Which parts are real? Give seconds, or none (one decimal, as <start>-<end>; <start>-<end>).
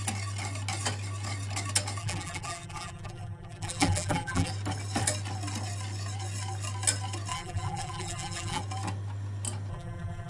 0.0-2.0; 4.5-7.3; 8.6-9.7